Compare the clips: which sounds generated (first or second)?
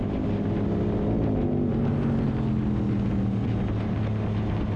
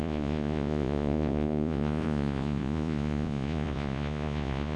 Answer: second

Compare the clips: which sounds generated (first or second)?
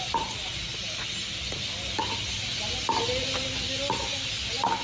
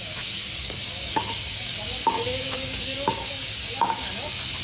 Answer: second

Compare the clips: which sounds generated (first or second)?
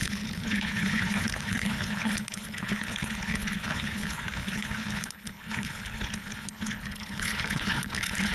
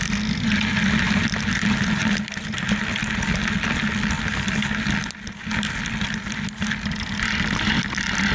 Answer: first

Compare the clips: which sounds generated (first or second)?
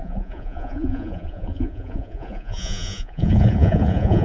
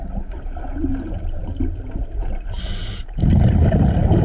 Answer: first